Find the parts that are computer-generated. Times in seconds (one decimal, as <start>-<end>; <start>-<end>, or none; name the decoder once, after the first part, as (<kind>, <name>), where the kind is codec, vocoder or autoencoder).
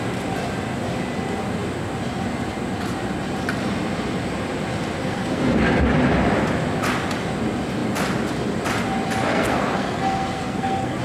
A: 5.0-5.6 (codec, SNAC); 9.3-11.0